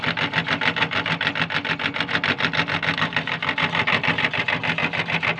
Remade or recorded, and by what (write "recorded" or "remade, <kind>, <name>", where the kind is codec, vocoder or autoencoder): recorded